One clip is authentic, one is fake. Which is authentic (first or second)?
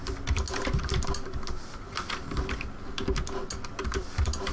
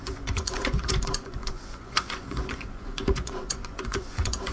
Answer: first